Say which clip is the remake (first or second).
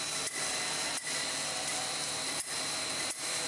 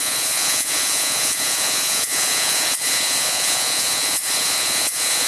second